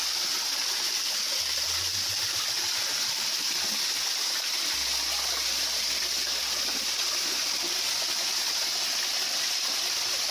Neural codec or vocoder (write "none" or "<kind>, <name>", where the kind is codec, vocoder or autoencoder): none